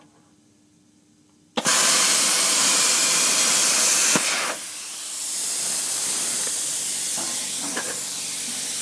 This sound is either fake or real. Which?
fake